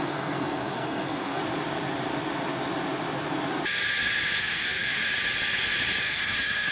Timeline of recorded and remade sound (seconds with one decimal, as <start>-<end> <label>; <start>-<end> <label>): 0.0-1.4 remade; 1.4-4.4 recorded; 4.4-5.0 remade; 5.0-6.0 recorded; 6.0-6.7 remade

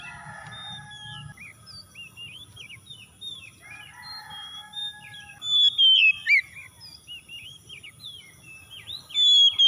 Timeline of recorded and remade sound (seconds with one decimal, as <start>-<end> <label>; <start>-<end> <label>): 0.0-9.7 recorded